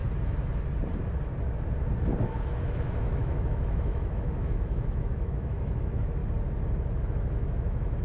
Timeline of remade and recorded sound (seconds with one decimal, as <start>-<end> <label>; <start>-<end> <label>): 0.0-2.2 recorded; 2.2-6.2 remade; 6.2-7.0 recorded; 7.0-8.0 remade